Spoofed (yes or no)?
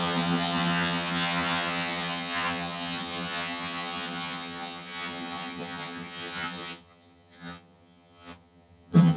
yes